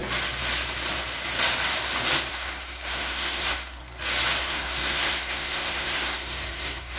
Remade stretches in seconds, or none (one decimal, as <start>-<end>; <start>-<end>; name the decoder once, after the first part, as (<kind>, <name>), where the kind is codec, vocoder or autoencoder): 2.3-3.8 (codec, SNAC); 4.4-7.0